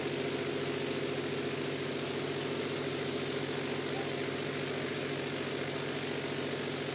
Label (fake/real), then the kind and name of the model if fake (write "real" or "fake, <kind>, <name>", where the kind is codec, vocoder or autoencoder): real